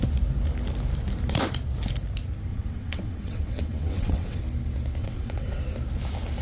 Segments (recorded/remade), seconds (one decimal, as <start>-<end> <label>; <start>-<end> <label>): 0.0-2.5 recorded; 2.5-4.4 remade; 4.4-5.0 recorded; 5.0-5.6 remade; 5.6-6.4 recorded